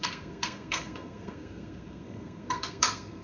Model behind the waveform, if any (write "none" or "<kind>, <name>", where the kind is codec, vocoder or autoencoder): codec, SNAC